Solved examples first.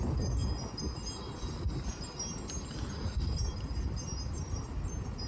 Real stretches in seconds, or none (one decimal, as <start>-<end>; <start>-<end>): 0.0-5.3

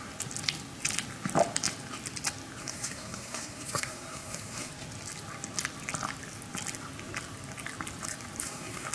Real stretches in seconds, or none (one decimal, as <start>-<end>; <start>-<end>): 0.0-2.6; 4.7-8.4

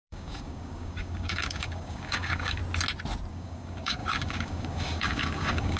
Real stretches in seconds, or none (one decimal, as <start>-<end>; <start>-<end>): 2.6-3.3